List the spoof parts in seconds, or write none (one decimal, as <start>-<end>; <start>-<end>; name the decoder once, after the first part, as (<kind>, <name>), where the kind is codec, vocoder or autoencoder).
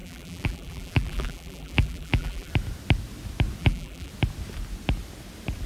0.0-2.5 (vocoder, BigVGAN v2); 3.6-4.1